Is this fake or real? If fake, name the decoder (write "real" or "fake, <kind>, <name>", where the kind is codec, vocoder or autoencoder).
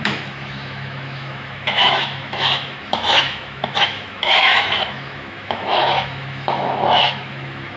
fake, autoencoder, DAC-VAE